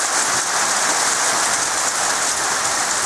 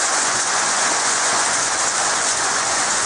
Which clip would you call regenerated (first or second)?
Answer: second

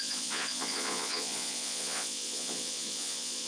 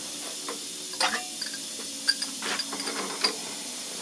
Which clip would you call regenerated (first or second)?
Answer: first